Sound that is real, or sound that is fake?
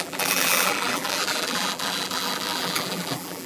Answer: fake